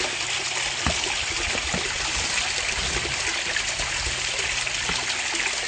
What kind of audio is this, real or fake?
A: real